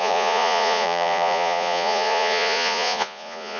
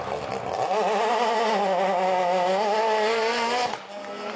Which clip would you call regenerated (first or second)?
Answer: first